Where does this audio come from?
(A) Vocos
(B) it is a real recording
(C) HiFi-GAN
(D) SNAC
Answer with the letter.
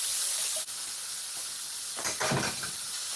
B